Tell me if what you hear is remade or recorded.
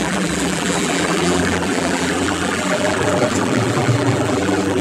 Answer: remade